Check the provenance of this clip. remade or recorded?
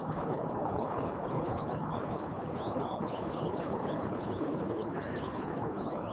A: remade